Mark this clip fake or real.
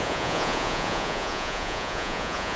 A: fake